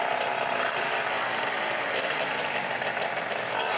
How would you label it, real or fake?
real